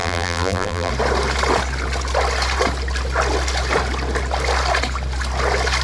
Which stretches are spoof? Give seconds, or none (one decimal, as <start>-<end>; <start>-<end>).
0.0-0.9